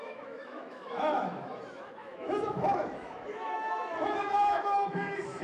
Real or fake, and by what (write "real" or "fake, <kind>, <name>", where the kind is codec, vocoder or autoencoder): fake, autoencoder, DAC-VAE